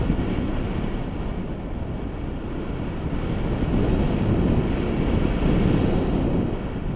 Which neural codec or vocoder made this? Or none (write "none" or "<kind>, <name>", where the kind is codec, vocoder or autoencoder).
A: none